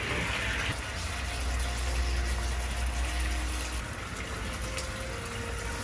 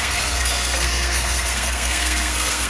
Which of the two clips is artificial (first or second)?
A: second